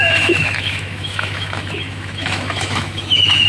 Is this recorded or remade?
remade